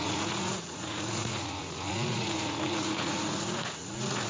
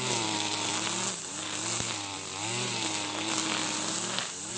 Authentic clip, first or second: second